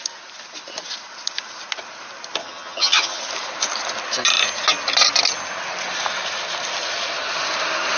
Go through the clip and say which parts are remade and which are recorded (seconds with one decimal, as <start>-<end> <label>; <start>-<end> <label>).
0.0-2.4 recorded; 2.4-3.2 remade; 3.2-8.0 recorded